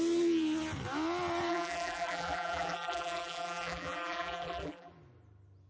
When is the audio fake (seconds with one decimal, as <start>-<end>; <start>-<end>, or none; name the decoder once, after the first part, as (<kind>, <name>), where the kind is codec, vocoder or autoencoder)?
1.5-4.9 (vocoder, BigVGAN v2)